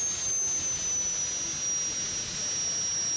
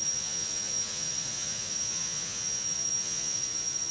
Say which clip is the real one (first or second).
first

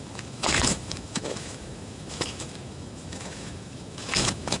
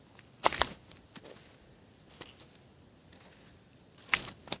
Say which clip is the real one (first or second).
second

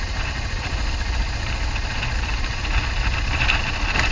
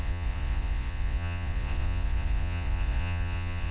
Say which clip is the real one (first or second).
first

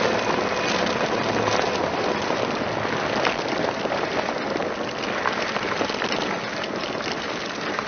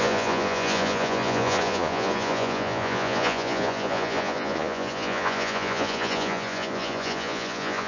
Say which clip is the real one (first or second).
first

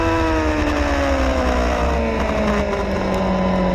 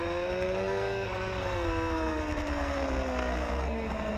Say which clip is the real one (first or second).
first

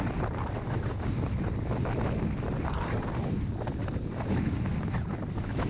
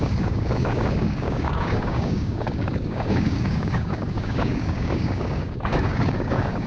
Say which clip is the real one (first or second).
first